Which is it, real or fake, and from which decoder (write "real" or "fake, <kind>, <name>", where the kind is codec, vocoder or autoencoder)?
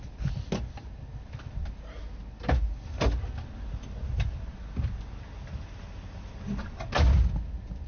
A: real